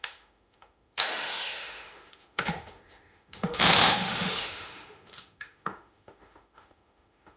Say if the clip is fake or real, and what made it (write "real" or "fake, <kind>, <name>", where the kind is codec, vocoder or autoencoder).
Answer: fake, autoencoder, DAC-VAE